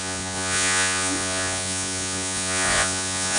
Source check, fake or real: fake